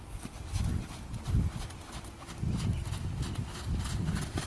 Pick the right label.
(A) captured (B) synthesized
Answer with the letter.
A